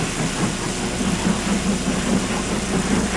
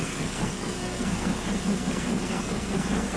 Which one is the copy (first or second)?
second